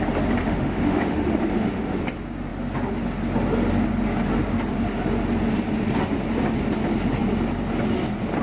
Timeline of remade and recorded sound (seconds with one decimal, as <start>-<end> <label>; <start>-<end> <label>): 0.0-0.4 recorded; 0.4-2.0 remade; 2.0-8.4 recorded